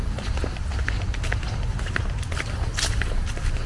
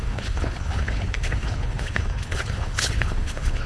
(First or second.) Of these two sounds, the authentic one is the first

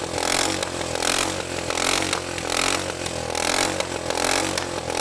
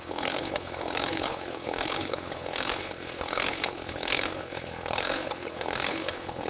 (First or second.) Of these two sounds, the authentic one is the first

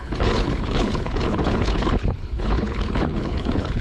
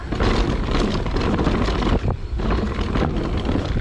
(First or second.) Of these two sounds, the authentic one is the second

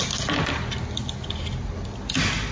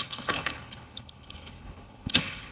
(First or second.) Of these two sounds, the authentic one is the first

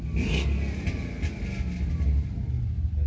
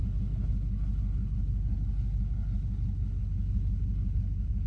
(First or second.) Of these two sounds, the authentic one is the first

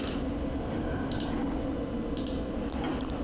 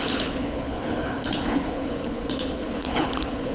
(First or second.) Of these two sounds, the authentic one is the first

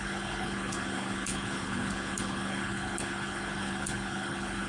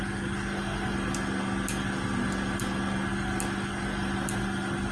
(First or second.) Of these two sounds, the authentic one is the second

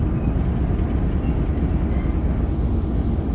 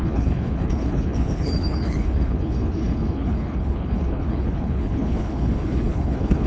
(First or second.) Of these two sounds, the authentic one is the first